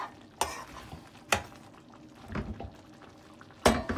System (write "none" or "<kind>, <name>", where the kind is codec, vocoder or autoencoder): none